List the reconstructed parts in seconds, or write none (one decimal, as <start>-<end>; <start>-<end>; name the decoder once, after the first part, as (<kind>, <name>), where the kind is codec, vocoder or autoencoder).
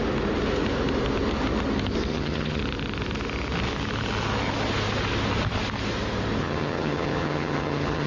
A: 2.1-2.6 (vocoder, HiFi-GAN); 6.4-8.1